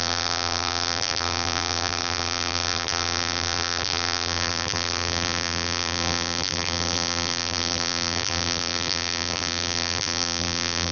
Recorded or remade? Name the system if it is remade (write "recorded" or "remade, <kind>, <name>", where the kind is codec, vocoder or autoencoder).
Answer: remade, vocoder, BigVGAN v2